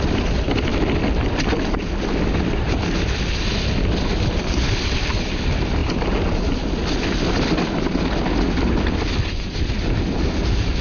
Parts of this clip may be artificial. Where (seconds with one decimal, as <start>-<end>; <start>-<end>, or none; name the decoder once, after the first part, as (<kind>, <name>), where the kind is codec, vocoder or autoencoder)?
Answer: none